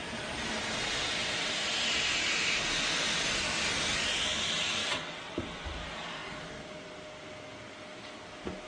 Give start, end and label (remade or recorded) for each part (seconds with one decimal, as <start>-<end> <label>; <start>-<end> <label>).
0.0-4.8 recorded; 4.8-5.4 remade; 5.4-8.7 recorded